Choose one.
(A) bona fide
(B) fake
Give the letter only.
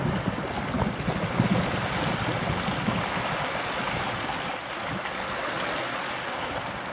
A